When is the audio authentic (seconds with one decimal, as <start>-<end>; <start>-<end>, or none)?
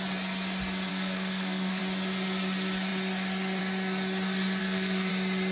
0.0-0.9; 1.8-4.6; 5.1-5.5